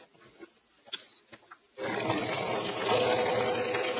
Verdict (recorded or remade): recorded